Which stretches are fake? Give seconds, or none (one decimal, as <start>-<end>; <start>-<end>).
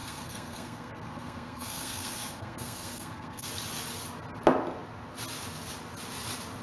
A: 0.0-3.5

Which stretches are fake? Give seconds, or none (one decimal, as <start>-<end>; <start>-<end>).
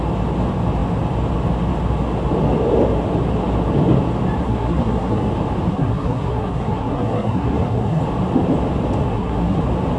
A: 4.4-5.3; 5.7-8.0; 9.0-9.6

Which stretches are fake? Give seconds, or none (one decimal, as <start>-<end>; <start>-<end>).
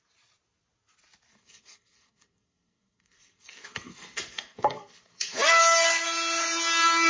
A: 1.3-5.6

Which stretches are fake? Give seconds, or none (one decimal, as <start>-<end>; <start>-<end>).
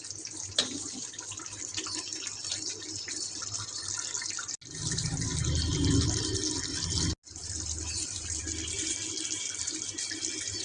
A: none